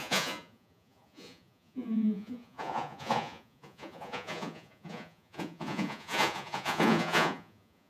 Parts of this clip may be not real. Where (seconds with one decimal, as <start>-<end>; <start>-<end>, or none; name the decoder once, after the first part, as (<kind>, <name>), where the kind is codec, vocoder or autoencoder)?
0.0-7.9 (vocoder, Vocos)